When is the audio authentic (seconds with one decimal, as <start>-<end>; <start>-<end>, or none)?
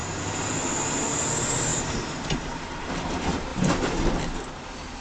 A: 0.0-1.7; 2.6-3.5; 4.1-5.0